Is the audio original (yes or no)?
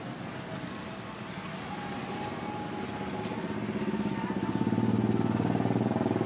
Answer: yes